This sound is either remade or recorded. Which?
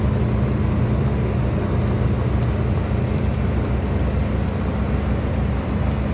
recorded